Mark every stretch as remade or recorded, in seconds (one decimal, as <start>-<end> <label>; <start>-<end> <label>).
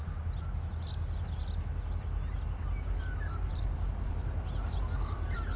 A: 0.0-5.6 recorded